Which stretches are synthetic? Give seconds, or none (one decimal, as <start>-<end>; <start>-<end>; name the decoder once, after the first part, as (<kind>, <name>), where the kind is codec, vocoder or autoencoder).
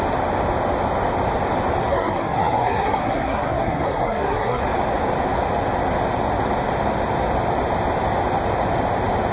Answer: 1.9-4.6 (codec, SNAC)